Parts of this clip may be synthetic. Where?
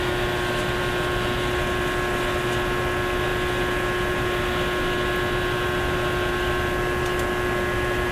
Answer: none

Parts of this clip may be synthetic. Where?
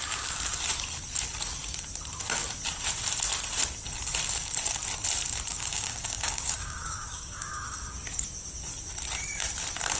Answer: 5.5-8.0 (codec, DAC)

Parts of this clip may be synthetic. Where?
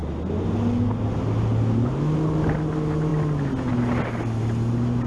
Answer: none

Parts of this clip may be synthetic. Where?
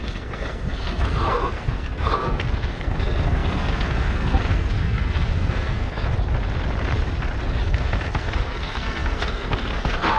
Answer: 0.0-6.1 (codec, SNAC); 7.6-10.2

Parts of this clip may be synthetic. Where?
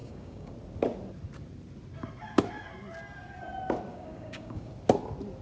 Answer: 0.0-0.5 (codec, DAC); 3.9-4.7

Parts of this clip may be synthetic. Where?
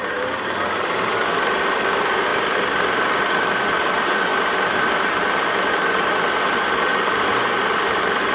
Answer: none